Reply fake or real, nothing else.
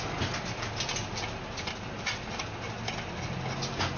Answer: real